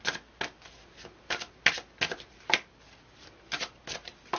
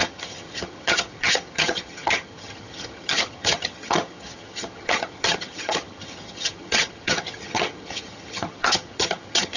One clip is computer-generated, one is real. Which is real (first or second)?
first